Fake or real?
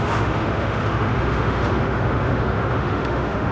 fake